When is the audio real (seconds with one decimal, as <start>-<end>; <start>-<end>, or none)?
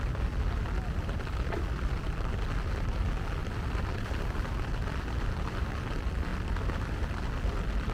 0.0-3.4; 5.7-6.3; 7.0-7.9